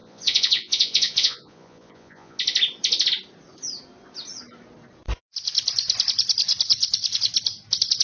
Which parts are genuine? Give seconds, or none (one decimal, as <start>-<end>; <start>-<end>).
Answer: 2.4-8.0